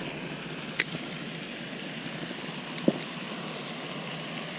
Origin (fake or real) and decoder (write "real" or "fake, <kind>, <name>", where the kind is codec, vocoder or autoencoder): real